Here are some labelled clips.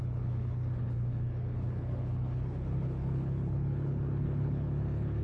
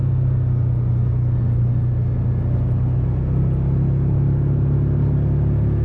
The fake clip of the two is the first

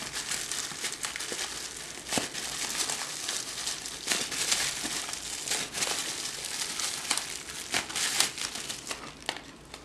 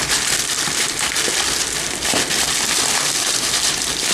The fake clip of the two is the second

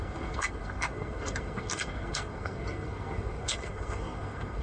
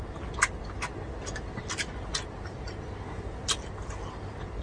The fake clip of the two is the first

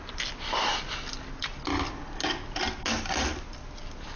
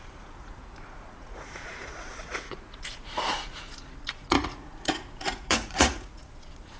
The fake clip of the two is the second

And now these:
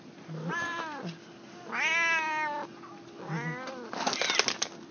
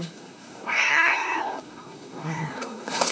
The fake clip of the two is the second